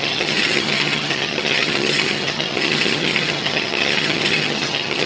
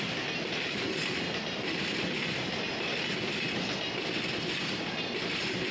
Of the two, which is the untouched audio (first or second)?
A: second